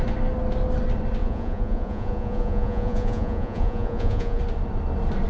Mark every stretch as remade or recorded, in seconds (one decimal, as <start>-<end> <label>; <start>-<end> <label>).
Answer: 0.0-1.2 recorded; 1.2-4.4 remade; 4.4-5.3 recorded